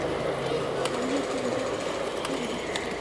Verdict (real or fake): real